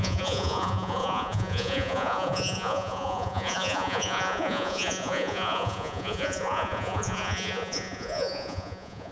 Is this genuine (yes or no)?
no